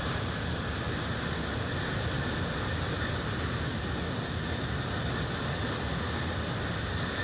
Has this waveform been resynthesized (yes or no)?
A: no